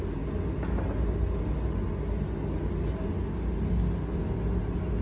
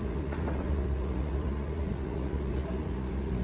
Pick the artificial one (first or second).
second